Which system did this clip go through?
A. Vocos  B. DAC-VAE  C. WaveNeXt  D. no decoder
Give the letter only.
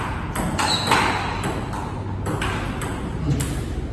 D